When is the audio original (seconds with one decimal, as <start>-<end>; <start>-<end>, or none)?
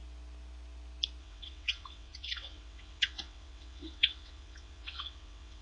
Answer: 0.0-1.2